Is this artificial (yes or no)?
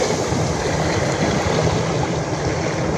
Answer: yes